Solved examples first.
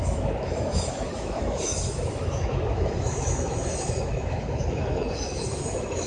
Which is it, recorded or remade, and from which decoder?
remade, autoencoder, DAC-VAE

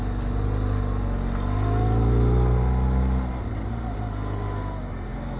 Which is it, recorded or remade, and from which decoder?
recorded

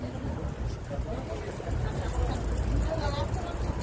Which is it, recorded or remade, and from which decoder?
recorded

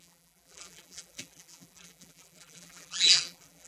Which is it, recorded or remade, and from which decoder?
remade, vocoder, BigVGAN v2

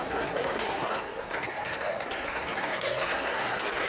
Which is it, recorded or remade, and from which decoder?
remade, codec, SNAC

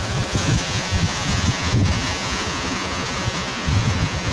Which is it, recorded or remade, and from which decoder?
remade, vocoder, Vocos